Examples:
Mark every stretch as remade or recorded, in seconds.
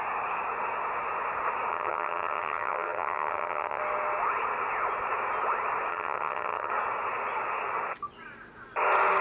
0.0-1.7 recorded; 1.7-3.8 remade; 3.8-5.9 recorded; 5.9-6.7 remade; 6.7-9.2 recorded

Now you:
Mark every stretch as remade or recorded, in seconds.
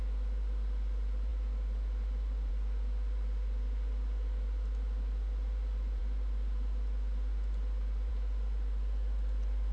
0.0-9.7 recorded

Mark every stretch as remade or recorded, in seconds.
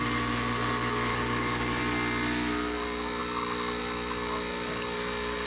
0.0-1.1 recorded; 1.1-1.8 remade; 1.8-5.5 recorded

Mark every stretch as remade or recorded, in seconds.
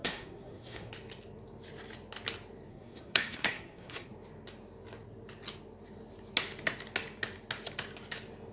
0.0-0.9 remade; 0.9-2.7 recorded; 2.7-4.1 remade; 4.1-8.5 recorded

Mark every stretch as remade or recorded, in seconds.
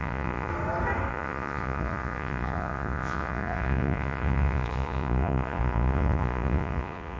0.0-0.5 remade; 0.5-1.1 recorded; 1.1-7.2 remade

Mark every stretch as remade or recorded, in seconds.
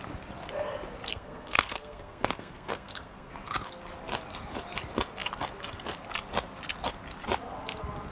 0.0-1.1 recorded; 1.1-3.3 remade; 3.3-8.1 recorded